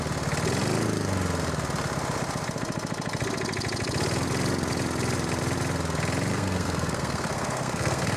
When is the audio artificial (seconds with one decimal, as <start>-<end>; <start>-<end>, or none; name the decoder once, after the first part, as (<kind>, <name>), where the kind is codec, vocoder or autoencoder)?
6.3-8.2 (codec, SNAC)

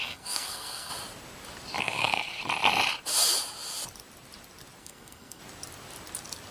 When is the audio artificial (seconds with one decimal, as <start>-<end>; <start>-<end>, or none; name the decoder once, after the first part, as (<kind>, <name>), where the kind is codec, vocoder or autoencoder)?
0.0-0.9 (codec, SNAC); 1.8-2.4; 4.8-5.4

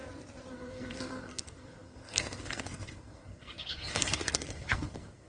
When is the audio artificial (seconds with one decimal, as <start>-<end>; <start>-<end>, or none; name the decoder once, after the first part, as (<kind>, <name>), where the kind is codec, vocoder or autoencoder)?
0.5-5.3 (codec, SNAC)

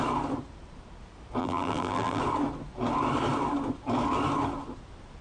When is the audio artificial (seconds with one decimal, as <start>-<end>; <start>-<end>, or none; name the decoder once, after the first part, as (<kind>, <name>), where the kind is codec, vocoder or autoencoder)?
1.4-2.2 (vocoder, BigVGAN v2)

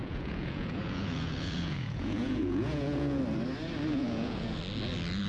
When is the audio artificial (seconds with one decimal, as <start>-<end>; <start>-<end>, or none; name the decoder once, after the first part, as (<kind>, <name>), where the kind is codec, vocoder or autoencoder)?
0.0-3.2 (vocoder, Vocos); 3.9-4.6